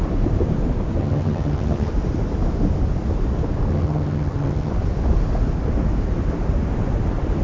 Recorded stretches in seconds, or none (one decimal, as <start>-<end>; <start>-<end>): 0.0-1.0; 1.9-3.7; 4.7-7.4